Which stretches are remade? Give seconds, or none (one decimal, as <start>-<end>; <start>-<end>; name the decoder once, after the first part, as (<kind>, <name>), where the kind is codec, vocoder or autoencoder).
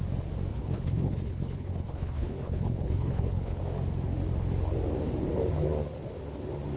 0.5-3.6 (codec, HILCodec)